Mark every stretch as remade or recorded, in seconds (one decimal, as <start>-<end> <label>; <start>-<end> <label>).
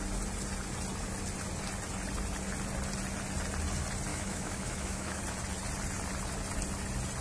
0.0-4.1 recorded; 4.1-5.2 remade; 5.2-7.2 recorded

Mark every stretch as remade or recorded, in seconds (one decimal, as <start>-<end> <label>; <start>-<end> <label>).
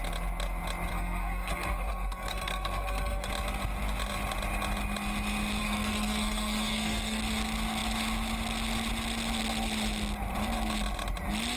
0.0-0.9 recorded; 0.9-3.3 remade; 3.3-5.6 recorded; 5.6-7.2 remade; 7.2-11.6 recorded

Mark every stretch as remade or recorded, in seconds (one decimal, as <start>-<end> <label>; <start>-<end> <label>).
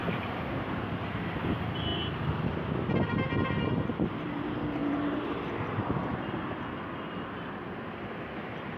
0.0-0.8 remade; 0.8-8.8 recorded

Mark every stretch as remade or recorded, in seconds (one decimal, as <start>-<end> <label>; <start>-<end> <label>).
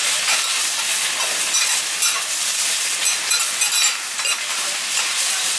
0.0-5.6 recorded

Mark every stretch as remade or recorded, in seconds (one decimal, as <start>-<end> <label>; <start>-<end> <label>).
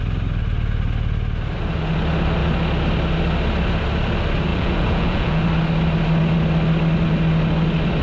0.0-4.5 recorded; 4.5-5.4 remade; 5.4-8.0 recorded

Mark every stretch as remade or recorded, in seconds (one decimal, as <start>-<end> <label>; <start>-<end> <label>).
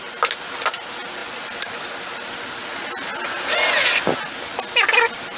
0.0-5.4 recorded